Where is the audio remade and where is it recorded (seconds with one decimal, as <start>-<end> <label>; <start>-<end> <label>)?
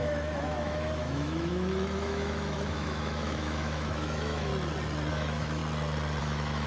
0.0-4.5 remade; 4.5-5.1 recorded; 5.1-5.6 remade; 5.6-6.2 recorded; 6.2-6.7 remade